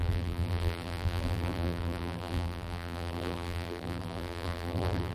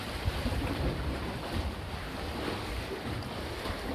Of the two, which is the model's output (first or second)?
first